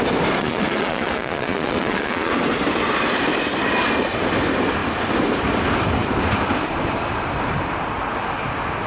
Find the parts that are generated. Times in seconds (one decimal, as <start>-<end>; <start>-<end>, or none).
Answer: 0.4-2.3